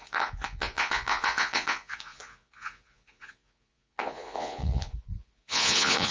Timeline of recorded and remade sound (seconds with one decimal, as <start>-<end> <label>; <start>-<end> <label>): 0.0-6.1 remade